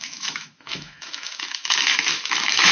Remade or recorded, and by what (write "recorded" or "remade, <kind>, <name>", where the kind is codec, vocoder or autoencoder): remade, autoencoder, DAC-VAE